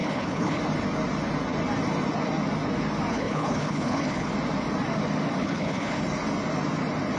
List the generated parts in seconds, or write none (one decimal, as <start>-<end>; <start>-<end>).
0.0-0.6; 3.1-4.3; 5.4-6.0